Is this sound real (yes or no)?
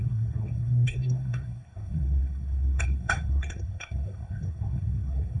no